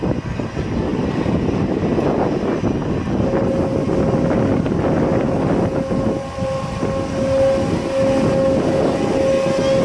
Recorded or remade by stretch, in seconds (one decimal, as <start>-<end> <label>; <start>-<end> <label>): 0.0-0.9 recorded; 0.9-1.7 remade; 1.7-6.2 recorded; 6.2-6.8 remade; 6.8-9.8 recorded